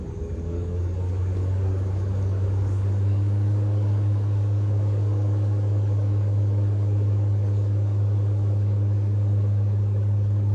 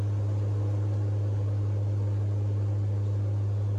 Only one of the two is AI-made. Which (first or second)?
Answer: first